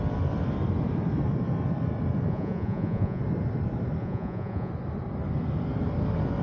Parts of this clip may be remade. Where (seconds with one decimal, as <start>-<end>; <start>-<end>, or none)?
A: 2.3-3.2; 4.0-4.7